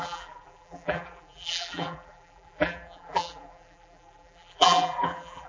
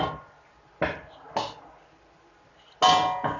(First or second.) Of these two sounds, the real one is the second